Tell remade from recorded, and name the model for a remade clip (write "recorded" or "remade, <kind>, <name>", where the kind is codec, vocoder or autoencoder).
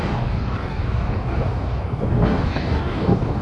remade, codec, DAC